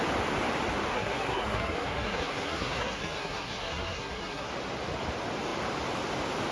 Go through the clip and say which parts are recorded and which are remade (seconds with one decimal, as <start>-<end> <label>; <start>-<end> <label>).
0.0-0.9 recorded; 0.9-4.5 remade; 4.5-6.5 recorded